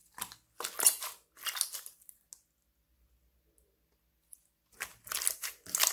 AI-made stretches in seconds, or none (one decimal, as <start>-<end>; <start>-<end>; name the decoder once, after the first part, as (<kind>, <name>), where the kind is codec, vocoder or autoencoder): none